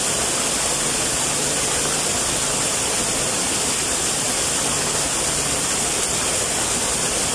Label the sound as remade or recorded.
recorded